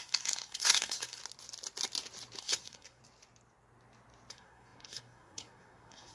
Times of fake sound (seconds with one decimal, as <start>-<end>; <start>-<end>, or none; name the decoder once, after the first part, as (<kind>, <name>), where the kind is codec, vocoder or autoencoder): 0.0-1.2 (codec, SNAC); 2.4-3.0; 4.3-6.1

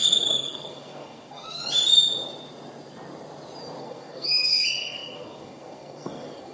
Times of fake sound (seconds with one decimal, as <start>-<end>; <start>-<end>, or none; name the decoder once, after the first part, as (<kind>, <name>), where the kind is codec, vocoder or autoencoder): 0.0-1.6 (codec, SNAC); 3.8-6.5